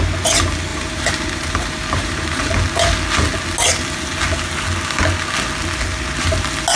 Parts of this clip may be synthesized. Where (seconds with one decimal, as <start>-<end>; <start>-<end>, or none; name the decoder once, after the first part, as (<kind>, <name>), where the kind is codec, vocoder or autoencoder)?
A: 0.7-2.5 (vocoder, BigVGAN v2)